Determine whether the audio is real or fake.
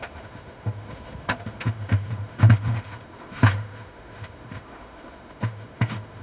fake